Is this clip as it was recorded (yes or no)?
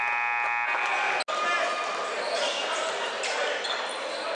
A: yes